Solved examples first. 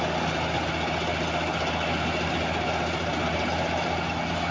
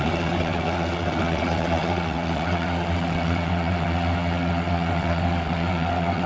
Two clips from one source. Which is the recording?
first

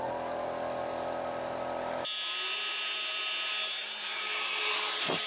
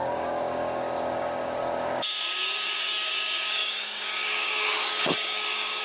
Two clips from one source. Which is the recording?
first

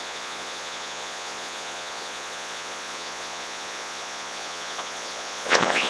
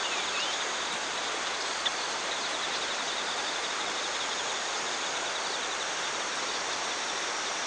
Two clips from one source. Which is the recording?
second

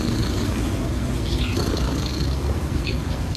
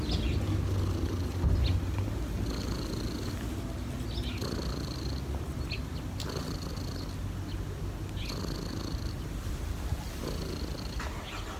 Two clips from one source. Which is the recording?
second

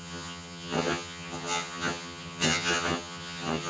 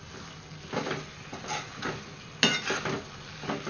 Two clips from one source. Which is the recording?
second